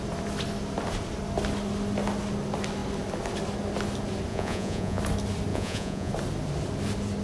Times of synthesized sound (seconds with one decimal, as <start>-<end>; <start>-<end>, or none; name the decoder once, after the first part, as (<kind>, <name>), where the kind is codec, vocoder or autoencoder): 4.3-5.0 (vocoder, Vocos); 5.5-6.1